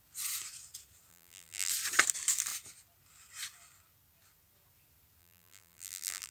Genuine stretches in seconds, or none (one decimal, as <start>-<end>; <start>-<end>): 0.0-1.1; 1.7-5.2